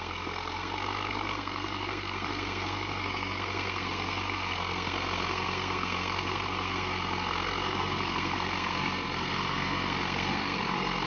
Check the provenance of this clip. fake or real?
fake